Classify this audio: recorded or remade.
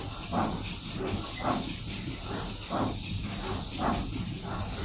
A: recorded